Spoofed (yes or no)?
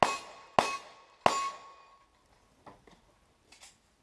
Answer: no